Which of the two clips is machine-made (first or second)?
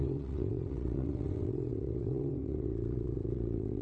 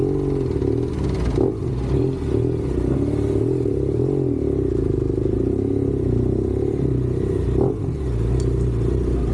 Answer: first